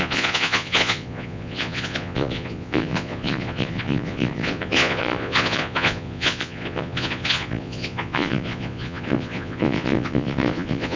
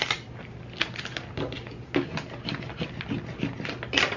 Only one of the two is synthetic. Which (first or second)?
first